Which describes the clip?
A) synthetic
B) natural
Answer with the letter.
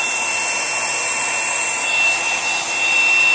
B